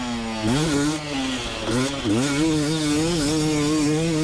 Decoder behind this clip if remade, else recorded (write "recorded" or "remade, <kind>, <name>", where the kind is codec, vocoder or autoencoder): recorded